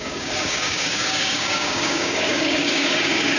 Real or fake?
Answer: fake